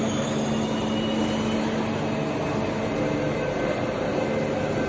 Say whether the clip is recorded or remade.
recorded